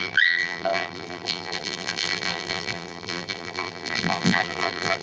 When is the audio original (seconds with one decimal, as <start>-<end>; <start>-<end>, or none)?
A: none